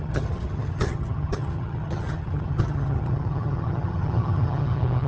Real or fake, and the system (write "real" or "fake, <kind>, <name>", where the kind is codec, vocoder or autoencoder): fake, vocoder, HiFi-GAN